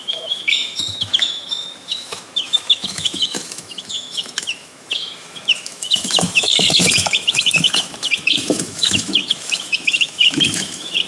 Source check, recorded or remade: remade